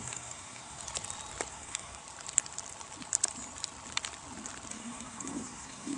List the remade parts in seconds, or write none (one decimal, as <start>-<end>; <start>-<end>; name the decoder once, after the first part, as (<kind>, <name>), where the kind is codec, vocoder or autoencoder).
0.0-0.8 (codec, SNAC); 1.5-2.0; 4.7-6.0